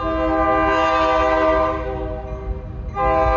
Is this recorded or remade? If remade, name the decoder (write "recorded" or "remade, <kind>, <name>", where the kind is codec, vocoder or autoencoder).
recorded